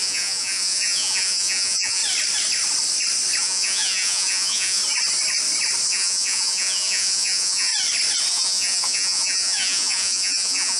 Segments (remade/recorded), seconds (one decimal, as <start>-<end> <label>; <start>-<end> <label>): 0.0-2.0 remade; 2.0-3.4 recorded; 3.4-4.8 remade; 4.8-5.9 recorded; 5.9-7.7 remade; 7.7-8.3 recorded; 8.3-10.8 remade